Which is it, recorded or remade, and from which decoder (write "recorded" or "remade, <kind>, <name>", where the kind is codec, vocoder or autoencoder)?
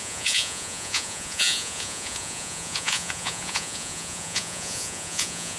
remade, vocoder, Vocos